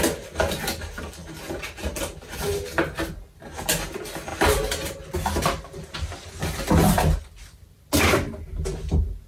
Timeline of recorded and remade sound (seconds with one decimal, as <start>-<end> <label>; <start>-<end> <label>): 0.0-9.3 recorded